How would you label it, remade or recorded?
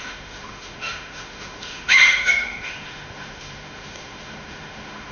remade